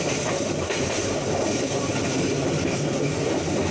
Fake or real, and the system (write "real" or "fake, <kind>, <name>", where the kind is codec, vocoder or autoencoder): real